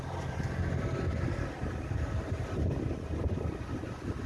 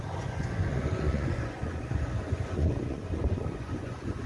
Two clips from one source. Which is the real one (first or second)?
first